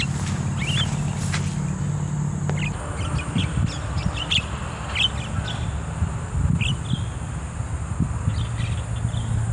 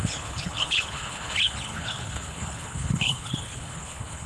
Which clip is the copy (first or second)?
second